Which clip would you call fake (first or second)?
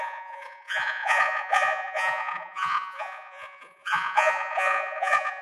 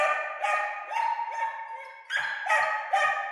first